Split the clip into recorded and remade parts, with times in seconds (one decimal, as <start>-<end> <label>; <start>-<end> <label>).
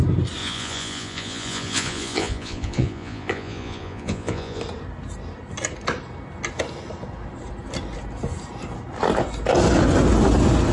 0.0-0.4 recorded; 0.4-4.6 remade; 4.6-10.7 recorded